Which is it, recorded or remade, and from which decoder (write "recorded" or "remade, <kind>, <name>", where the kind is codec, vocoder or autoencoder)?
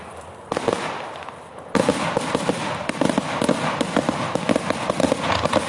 recorded